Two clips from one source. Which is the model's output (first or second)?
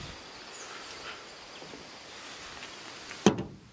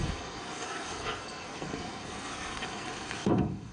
second